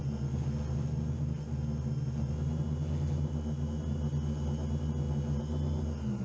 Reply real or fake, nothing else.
real